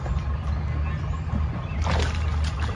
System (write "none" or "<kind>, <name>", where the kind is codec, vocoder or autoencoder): none